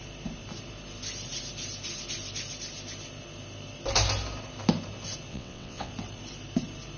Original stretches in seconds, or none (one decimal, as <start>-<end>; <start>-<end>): 0.0-5.3; 5.9-7.0